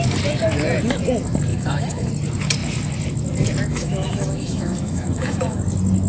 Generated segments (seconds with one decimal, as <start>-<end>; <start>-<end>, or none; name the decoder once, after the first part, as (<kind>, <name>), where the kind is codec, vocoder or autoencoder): 1.5-2.1 (autoencoder, DAC-VAE); 3.7-5.6